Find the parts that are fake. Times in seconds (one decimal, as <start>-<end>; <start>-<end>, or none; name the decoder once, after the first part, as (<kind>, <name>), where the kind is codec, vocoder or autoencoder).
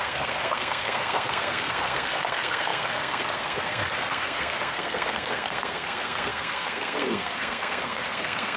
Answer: 0.0-8.6 (codec, SNAC)